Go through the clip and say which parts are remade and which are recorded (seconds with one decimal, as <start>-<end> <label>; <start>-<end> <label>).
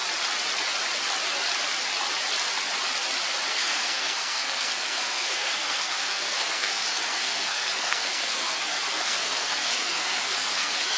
0.0-3.5 recorded; 3.5-11.0 remade